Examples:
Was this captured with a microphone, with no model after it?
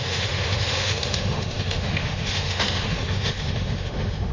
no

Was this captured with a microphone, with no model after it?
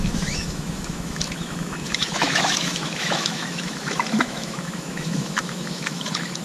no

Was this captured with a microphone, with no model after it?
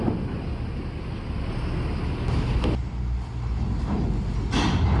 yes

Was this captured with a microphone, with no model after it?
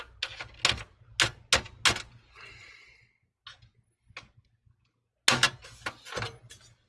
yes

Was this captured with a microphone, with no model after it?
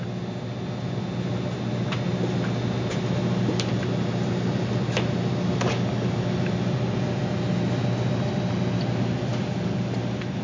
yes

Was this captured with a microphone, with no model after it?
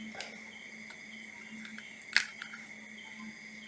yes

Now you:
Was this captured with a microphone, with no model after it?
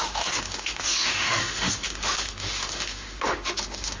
no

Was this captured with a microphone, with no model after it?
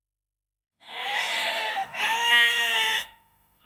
no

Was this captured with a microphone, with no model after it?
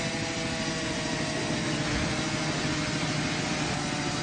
yes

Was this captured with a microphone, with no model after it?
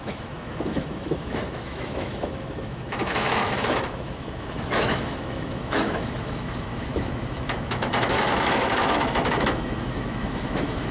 no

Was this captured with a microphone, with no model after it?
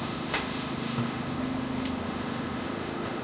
no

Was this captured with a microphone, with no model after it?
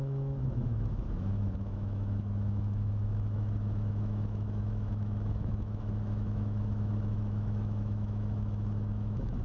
no